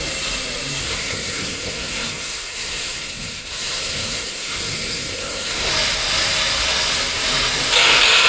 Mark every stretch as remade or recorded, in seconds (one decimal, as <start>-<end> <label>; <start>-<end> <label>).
0.0-0.8 recorded; 0.8-5.7 remade; 5.7-8.3 recorded